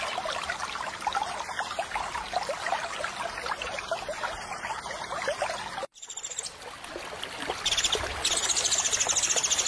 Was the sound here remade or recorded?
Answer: recorded